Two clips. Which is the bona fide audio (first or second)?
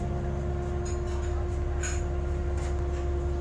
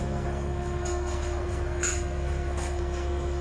first